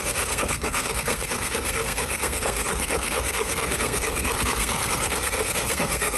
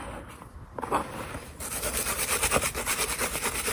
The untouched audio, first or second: second